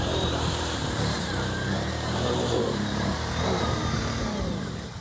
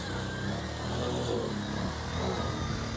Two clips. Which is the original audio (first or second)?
second